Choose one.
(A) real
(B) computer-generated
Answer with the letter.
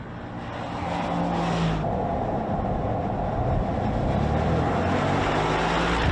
A